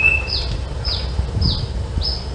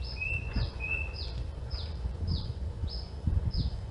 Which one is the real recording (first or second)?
first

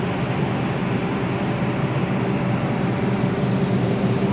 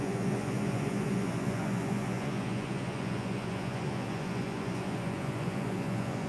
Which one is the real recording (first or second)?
first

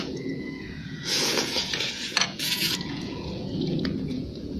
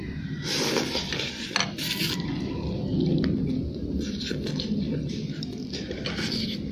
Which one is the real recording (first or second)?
second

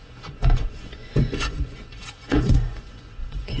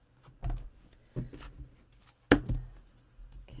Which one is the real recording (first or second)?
second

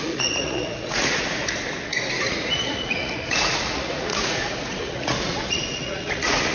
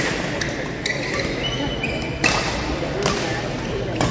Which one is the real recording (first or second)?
second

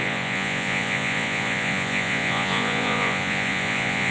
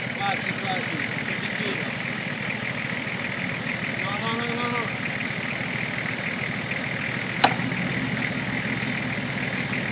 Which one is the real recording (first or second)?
second